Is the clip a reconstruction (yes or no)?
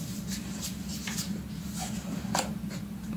yes